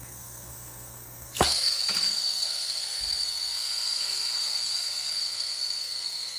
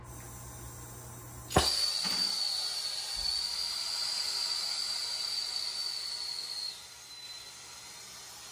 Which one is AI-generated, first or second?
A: first